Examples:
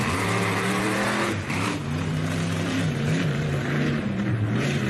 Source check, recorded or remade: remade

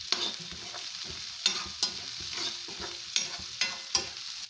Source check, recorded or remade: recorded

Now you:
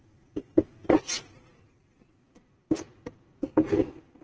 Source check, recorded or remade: recorded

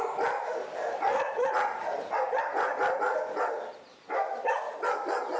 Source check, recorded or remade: recorded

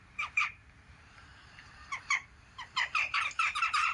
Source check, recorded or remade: remade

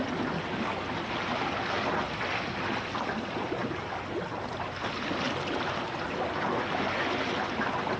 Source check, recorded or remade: recorded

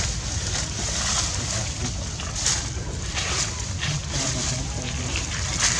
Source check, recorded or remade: recorded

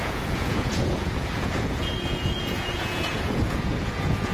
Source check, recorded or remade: remade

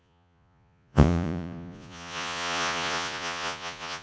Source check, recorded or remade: remade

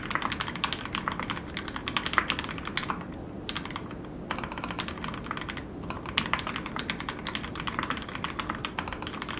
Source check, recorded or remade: recorded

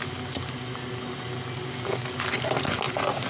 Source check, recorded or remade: recorded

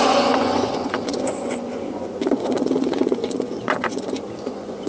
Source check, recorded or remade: remade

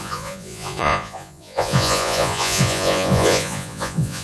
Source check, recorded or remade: remade